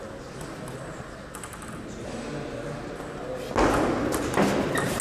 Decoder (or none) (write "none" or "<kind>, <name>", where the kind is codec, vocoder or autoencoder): none